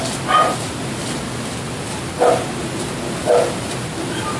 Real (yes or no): yes